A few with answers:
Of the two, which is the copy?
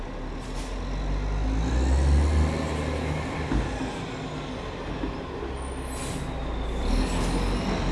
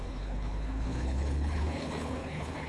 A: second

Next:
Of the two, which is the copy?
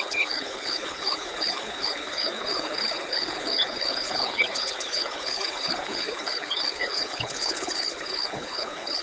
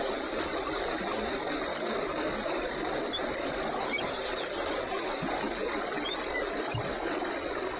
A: first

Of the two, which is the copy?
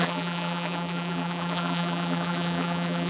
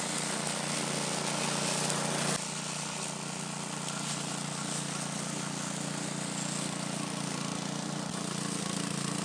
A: first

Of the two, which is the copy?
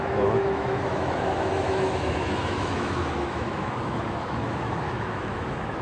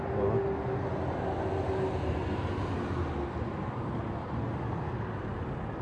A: first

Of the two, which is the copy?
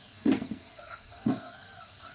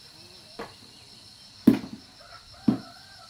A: first